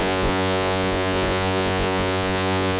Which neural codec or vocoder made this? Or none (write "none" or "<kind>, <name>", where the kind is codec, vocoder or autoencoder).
vocoder, Vocos